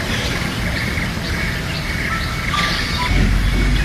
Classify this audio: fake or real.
real